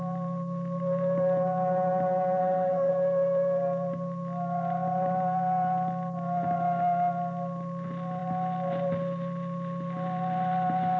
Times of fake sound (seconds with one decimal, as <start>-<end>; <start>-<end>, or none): 2.4-2.9